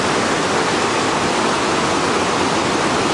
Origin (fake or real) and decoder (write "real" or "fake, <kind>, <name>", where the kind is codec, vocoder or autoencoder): real